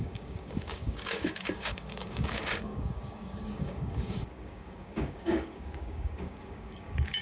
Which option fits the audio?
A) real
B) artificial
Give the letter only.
B